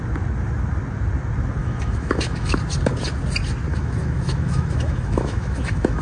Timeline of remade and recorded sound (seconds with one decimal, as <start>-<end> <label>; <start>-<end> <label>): 0.0-1.6 recorded; 1.6-2.6 remade; 2.6-3.7 recorded; 3.7-6.0 remade